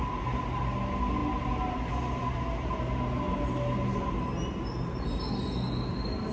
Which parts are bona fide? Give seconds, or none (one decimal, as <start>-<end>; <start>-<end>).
0.0-6.3